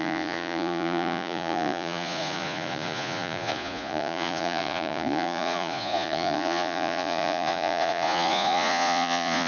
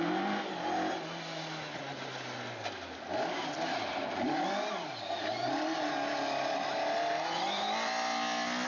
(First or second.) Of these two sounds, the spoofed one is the first